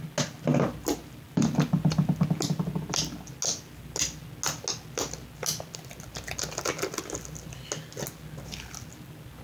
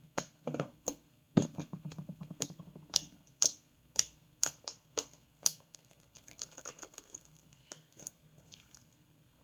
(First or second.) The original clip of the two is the first